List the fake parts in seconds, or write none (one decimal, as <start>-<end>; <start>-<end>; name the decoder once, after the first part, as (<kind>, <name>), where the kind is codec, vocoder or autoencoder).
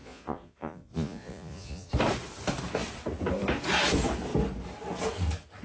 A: 0.0-1.9 (vocoder, Vocos)